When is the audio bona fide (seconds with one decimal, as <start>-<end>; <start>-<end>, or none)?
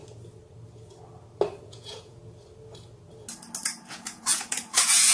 0.0-1.6; 2.2-3.9